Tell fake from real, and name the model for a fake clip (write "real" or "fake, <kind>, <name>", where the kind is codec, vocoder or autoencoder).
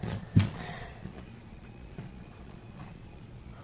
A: fake, vocoder, Vocos